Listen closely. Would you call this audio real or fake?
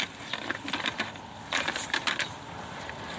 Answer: fake